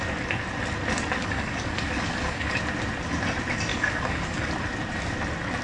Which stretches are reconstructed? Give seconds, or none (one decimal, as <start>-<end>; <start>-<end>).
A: 1.2-2.6; 3.7-4.5